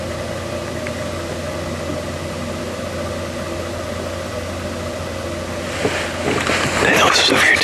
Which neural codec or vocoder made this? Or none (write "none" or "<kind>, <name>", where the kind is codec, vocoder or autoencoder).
none